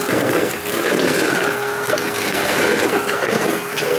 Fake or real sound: fake